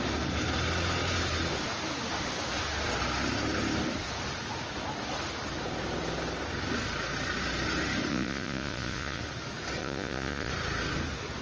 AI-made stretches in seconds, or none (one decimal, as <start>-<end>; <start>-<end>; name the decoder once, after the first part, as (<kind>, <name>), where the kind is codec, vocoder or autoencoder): 8.1-9.2 (vocoder, Vocos); 9.8-10.5